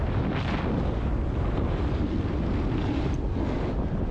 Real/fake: real